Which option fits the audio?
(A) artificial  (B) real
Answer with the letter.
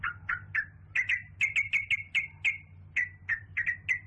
B